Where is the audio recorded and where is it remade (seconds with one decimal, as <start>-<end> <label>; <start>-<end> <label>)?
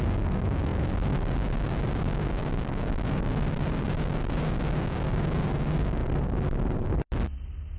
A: 0.0-6.0 remade; 6.0-7.8 recorded